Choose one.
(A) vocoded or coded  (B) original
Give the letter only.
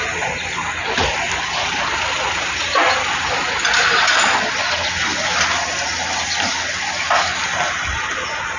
B